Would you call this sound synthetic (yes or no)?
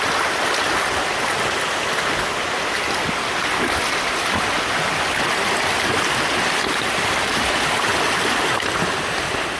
no